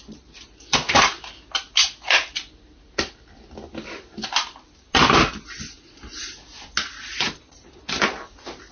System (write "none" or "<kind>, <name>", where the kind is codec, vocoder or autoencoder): none